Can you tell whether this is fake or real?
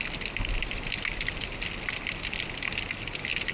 real